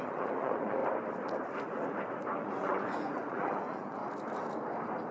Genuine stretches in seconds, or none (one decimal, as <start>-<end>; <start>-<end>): 0.8-2.4; 4.0-5.1